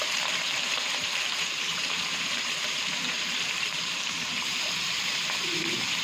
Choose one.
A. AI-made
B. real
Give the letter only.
A